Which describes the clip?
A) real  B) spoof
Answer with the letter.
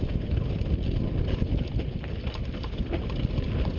A